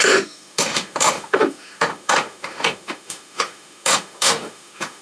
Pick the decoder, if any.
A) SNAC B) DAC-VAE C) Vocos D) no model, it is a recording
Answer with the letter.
B